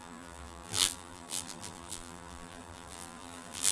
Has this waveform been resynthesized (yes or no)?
yes